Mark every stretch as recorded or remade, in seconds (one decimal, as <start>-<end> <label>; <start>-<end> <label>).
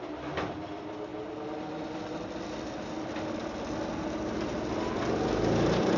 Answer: 0.0-6.0 recorded